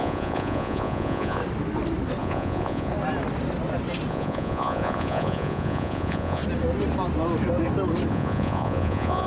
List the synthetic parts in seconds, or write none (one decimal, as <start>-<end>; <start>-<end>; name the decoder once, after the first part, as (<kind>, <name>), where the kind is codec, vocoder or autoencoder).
0.0-1.4 (vocoder, Vocos); 2.2-2.9; 4.1-6.4; 8.1-9.3